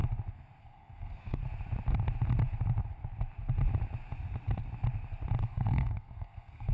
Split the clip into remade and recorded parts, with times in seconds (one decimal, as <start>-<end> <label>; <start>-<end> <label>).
0.0-0.6 recorded; 0.6-1.4 remade; 1.4-5.4 recorded; 5.4-6.7 remade